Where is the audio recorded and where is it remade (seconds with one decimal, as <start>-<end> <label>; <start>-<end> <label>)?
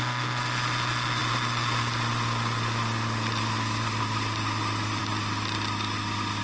0.0-6.4 recorded